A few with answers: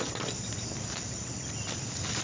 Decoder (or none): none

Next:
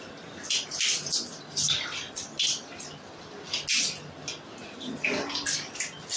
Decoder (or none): none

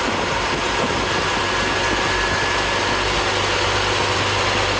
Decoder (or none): none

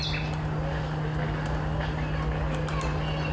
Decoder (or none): none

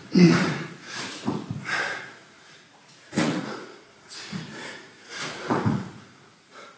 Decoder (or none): vocoder, Vocos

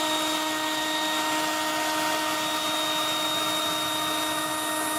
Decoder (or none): none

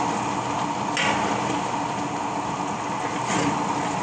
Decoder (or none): none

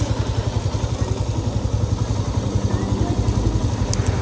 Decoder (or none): none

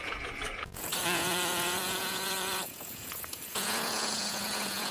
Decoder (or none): vocoder, Vocos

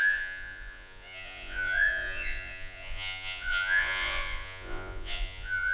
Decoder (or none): vocoder, Vocos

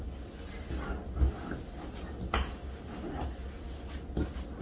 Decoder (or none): none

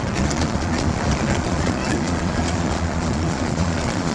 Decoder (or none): vocoder, Vocos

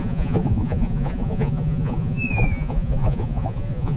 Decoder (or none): vocoder, Vocos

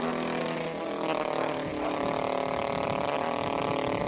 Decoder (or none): none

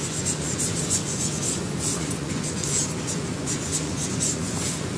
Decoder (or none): vocoder, Vocos